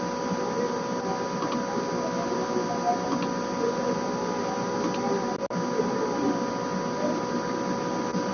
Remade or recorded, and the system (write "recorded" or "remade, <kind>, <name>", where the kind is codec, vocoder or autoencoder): recorded